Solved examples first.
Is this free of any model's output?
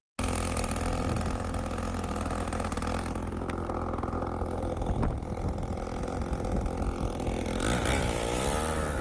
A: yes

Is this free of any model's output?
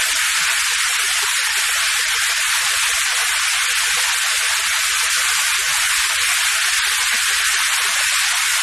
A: yes